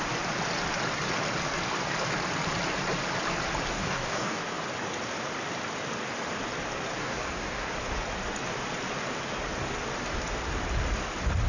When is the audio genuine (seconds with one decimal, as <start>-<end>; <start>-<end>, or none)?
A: 0.0-3.7; 4.4-7.0; 7.7-11.5